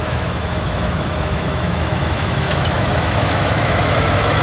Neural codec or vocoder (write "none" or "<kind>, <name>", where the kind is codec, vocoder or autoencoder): autoencoder, DAC-VAE